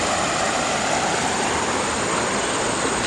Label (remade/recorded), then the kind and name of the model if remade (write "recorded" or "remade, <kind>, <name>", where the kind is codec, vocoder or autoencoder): recorded